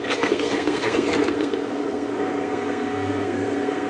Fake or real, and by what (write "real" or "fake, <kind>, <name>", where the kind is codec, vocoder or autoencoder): fake, codec, SNAC